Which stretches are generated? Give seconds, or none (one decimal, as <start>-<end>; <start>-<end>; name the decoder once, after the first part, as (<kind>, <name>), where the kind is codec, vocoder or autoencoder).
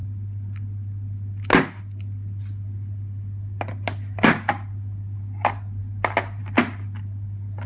none